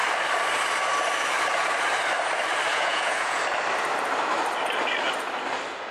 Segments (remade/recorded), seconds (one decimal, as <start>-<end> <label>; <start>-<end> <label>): 0.0-2.7 recorded; 2.7-3.4 remade; 3.4-5.9 recorded